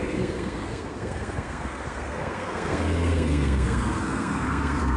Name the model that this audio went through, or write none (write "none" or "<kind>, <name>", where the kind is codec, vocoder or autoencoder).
codec, SNAC